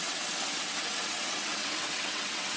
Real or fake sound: fake